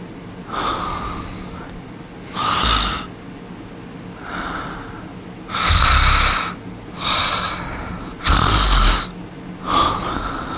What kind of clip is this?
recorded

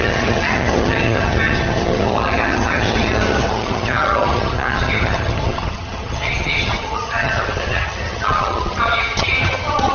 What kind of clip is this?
remade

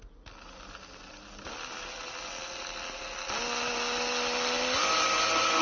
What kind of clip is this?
recorded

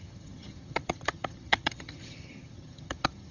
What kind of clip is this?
remade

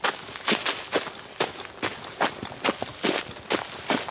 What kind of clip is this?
recorded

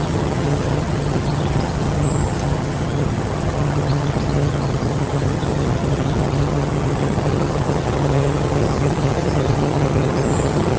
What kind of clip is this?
remade